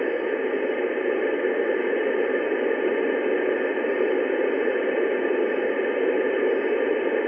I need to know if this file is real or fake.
real